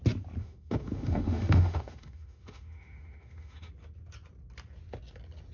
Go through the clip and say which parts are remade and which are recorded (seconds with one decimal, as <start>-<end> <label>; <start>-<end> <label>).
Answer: 0.0-0.4 recorded; 0.4-3.7 remade; 3.7-5.5 recorded